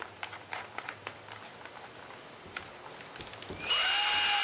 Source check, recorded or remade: recorded